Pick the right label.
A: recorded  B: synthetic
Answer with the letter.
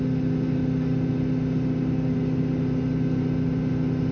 A